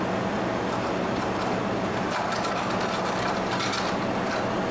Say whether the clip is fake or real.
real